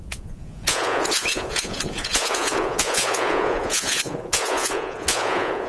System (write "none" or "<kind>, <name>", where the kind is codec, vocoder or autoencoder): vocoder, Vocos